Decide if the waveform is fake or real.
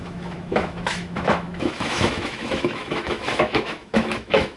fake